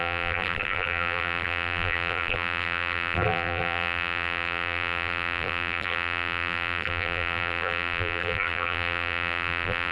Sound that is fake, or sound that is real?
fake